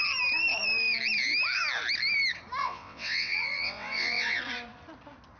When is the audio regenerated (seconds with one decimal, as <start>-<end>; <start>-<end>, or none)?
2.6-4.4

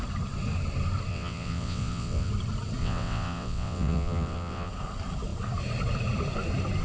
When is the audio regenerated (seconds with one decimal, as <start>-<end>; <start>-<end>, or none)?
1.1-2.3; 2.8-4.7